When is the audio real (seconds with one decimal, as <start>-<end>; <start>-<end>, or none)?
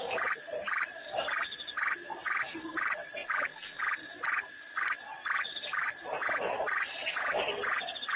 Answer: 0.0-3.2; 3.8-8.2